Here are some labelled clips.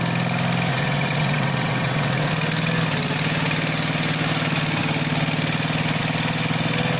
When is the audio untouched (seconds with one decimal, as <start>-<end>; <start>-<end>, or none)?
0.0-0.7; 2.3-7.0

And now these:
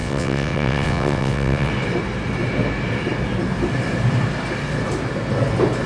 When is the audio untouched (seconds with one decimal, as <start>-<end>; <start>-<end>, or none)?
1.7-5.9

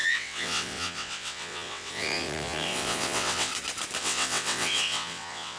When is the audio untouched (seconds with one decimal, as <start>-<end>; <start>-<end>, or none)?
3.5-4.0